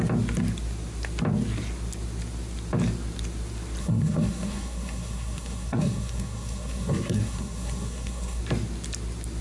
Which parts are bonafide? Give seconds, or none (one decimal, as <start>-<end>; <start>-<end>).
0.0-3.8; 8.4-9.4